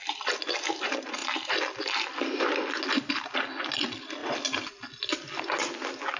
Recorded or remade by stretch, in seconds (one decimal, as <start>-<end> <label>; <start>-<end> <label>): 0.0-6.2 recorded

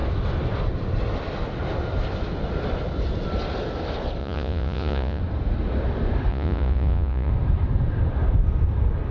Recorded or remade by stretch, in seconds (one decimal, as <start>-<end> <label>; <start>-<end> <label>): 0.0-4.2 recorded; 4.2-5.2 remade; 5.2-6.3 recorded; 6.3-7.3 remade; 7.3-9.1 recorded